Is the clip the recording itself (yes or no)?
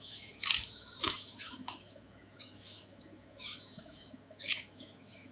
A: no